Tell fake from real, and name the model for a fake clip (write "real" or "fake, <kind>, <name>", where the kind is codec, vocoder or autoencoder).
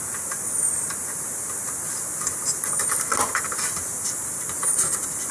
real